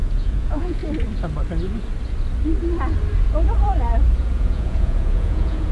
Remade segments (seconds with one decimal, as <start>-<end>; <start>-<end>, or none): 0.0-0.8; 4.2-5.7